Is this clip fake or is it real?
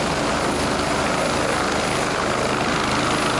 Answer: real